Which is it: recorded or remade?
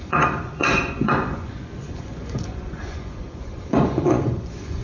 remade